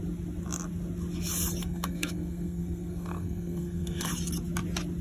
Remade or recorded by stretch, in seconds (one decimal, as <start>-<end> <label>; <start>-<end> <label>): 0.0-1.6 recorded; 1.6-4.1 remade; 4.1-5.0 recorded